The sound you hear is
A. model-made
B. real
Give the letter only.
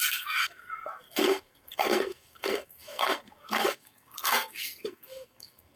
A